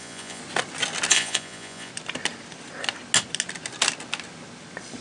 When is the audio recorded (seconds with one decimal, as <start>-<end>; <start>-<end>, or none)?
0.4-1.1; 1.9-5.0